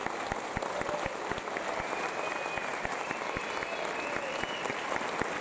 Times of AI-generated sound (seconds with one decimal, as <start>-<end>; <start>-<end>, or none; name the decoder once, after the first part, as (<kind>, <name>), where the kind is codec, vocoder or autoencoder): none